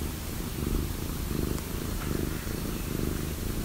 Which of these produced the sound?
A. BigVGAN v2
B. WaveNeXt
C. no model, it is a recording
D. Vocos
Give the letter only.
A